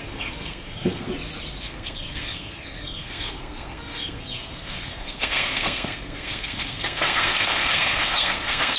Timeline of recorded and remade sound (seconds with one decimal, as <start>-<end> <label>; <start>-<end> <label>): 0.0-1.1 remade; 1.1-1.6 recorded; 1.6-8.8 remade